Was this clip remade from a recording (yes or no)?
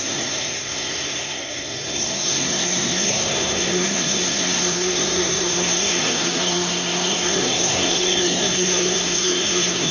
yes